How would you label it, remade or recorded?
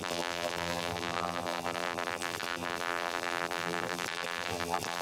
remade